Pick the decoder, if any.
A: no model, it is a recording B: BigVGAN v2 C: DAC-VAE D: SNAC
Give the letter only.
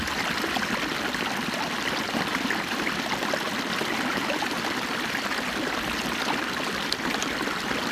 A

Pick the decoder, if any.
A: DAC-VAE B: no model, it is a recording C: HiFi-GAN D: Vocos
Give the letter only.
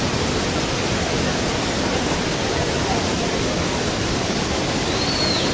B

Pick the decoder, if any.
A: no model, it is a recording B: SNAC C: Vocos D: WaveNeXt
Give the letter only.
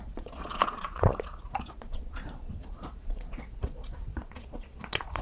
C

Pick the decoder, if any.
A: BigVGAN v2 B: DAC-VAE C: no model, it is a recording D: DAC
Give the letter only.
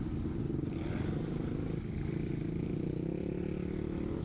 C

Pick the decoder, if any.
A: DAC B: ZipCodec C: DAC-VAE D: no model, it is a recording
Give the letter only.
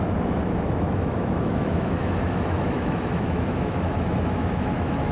C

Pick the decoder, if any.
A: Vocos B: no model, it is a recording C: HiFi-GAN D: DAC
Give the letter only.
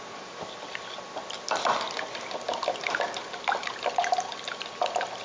B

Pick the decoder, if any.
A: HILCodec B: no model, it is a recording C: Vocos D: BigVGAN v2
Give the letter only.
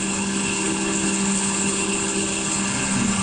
A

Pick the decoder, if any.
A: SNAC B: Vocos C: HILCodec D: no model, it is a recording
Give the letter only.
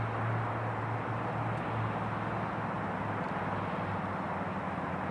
D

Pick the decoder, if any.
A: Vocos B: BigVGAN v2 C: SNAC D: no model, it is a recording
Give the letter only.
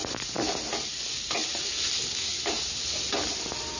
D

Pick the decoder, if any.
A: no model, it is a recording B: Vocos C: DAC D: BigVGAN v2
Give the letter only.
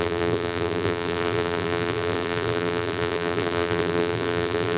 D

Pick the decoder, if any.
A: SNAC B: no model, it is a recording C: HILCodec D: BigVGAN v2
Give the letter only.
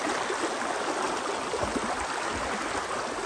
B